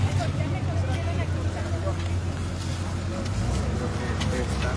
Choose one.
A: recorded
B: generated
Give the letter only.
A